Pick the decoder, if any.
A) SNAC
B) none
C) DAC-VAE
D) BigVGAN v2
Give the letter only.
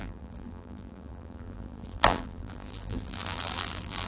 D